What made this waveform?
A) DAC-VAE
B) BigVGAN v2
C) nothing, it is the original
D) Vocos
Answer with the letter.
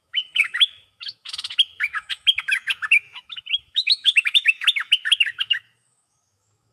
A